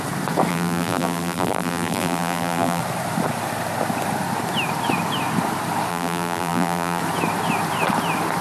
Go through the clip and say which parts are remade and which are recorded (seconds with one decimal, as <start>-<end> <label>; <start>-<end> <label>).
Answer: 0.0-0.5 recorded; 0.5-2.8 remade; 2.8-5.9 recorded; 5.9-7.0 remade; 7.0-8.4 recorded